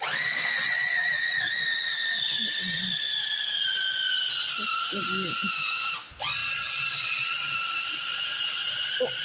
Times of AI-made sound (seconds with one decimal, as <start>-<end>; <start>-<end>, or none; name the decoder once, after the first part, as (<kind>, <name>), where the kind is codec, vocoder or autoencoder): 5.0-5.9 (vocoder, Vocos)